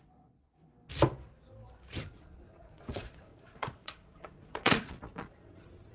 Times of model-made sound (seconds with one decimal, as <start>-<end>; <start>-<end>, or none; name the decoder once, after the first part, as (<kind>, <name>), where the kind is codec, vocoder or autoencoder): 0.0-0.6 (vocoder, Vocos); 2.1-5.9